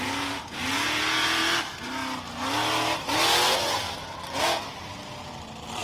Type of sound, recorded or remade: recorded